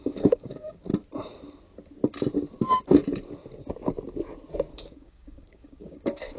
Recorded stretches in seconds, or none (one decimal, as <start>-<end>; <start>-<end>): 0.9-4.7